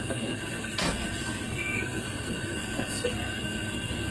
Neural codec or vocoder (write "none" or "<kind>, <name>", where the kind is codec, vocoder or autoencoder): codec, SNAC